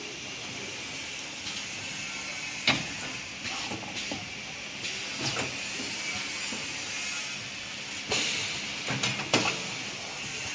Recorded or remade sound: recorded